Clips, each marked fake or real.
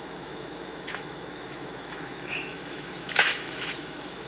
fake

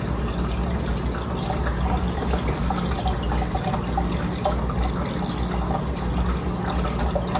real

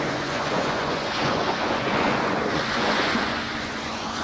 fake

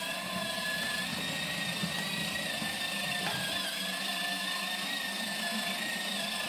real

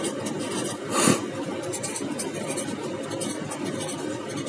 real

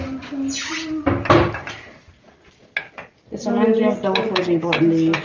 real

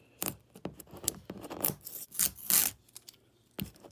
real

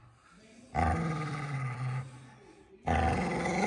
real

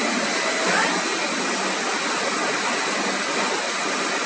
real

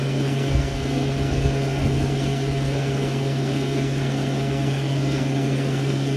fake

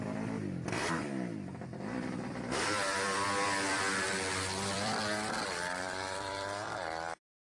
fake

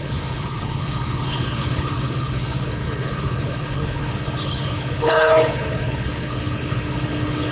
fake